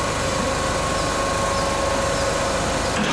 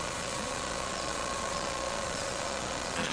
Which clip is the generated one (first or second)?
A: second